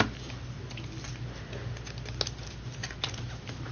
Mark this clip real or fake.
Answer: real